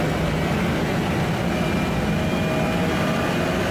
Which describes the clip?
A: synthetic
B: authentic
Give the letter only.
B